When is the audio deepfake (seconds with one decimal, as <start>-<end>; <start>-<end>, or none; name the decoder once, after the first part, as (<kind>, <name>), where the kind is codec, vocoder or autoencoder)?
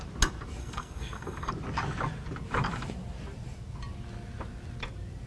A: 0.6-1.5 (codec, SNAC)